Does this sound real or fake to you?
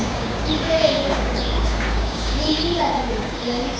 fake